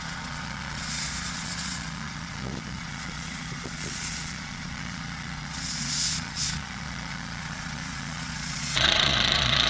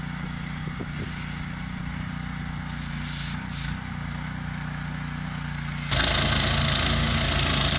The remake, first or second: first